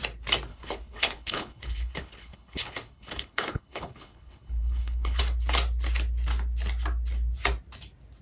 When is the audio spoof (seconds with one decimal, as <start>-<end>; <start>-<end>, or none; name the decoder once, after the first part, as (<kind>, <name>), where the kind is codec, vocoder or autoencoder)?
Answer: 0.5-5.2 (codec, HILCodec)